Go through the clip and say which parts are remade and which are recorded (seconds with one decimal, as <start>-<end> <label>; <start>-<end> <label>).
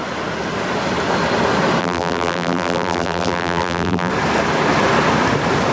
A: 0.0-1.8 recorded; 1.8-4.1 remade; 4.1-5.7 recorded